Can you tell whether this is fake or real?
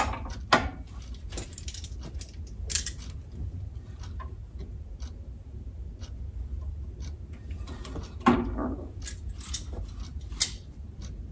real